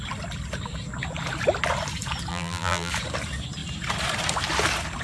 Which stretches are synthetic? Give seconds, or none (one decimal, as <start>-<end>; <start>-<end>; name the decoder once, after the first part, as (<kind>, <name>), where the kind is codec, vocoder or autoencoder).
2.3-2.9 (vocoder, BigVGAN v2)